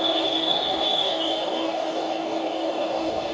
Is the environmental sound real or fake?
fake